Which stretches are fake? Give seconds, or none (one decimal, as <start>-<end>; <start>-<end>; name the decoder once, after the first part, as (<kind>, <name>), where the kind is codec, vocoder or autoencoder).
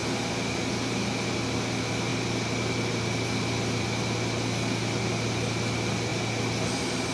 none